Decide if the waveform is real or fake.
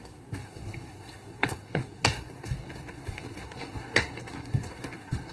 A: fake